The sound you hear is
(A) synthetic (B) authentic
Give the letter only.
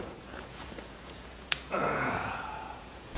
A